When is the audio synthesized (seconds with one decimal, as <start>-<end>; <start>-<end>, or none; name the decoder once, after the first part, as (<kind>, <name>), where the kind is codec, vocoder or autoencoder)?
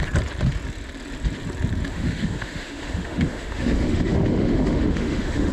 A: 1.9-5.5 (autoencoder, DAC-VAE)